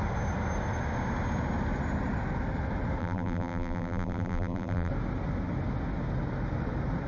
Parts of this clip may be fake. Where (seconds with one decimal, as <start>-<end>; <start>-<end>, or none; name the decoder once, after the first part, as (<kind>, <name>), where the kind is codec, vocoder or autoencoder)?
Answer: 3.0-4.9 (vocoder, BigVGAN v2)